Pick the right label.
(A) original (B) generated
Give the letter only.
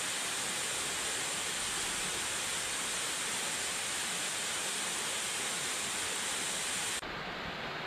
A